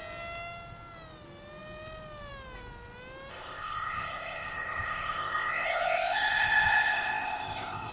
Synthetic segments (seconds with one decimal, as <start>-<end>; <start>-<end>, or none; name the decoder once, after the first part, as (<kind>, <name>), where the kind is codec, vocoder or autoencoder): 3.3-7.9 (codec, ZipCodec)

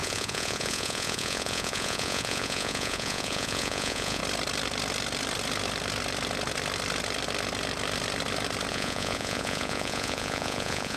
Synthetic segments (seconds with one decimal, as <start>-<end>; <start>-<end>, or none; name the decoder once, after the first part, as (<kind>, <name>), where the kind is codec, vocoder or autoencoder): 0.0-4.2 (vocoder, Vocos); 8.7-11.0